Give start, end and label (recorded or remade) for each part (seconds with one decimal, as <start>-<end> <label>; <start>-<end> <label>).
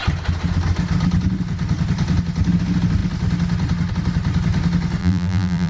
0.0-5.0 recorded; 5.0-5.7 remade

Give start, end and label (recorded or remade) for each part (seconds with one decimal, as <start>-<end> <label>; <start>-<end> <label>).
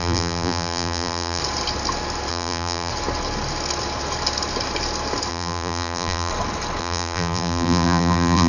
0.0-1.4 remade; 1.4-2.3 recorded; 2.3-2.9 remade; 2.9-5.3 recorded; 5.3-6.3 remade; 6.3-6.8 recorded; 6.8-8.5 remade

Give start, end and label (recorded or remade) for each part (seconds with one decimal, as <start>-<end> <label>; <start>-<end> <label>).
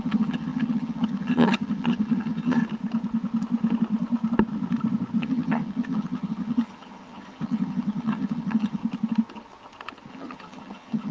0.0-2.6 remade; 2.6-5.2 recorded; 5.2-8.8 remade; 8.8-10.1 recorded; 10.1-11.1 remade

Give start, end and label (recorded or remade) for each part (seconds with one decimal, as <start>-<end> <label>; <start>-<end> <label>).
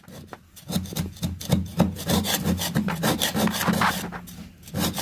0.0-5.0 recorded